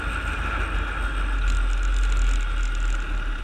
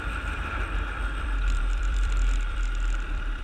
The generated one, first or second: second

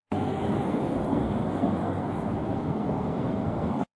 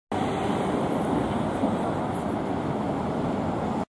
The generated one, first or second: first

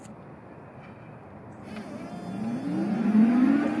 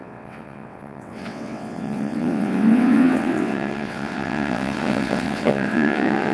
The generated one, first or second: second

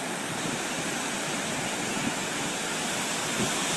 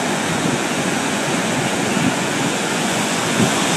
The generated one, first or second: second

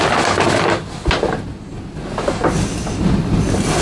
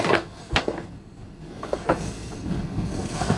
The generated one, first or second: second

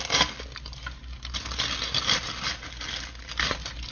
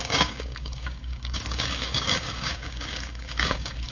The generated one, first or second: second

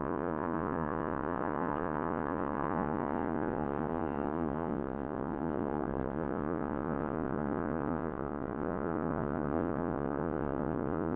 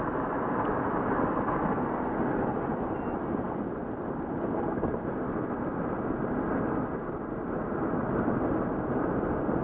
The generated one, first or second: first